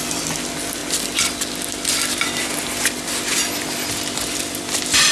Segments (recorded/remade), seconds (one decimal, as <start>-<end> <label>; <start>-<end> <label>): 0.0-5.1 recorded

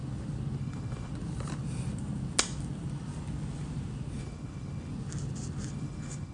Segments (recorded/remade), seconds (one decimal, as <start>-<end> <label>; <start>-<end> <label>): 0.0-0.6 recorded; 0.6-1.1 remade; 1.1-4.2 recorded; 4.2-4.9 remade; 4.9-5.7 recorded; 5.7-6.3 remade

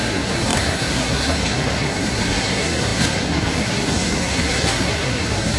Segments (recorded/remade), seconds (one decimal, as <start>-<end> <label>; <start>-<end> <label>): 0.0-5.6 remade

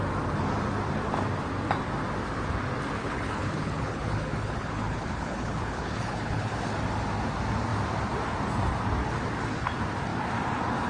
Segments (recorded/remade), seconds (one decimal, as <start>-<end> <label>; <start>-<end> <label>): 0.0-3.0 recorded; 3.0-6.5 remade; 6.5-10.9 recorded